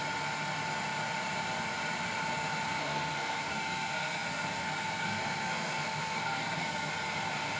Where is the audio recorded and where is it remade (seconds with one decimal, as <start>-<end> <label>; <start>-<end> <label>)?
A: 0.0-2.8 recorded; 2.8-6.9 remade; 6.9-7.6 recorded